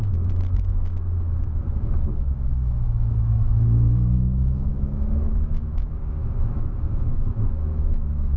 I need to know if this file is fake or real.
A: fake